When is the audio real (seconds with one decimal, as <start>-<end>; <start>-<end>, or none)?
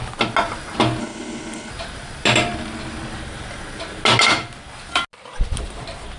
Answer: 0.0-1.0; 1.7-6.2